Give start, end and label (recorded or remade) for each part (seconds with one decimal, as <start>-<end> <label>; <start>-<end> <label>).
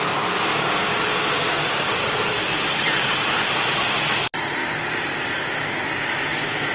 0.0-0.5 recorded; 0.5-2.6 remade; 2.6-4.6 recorded; 4.6-6.7 remade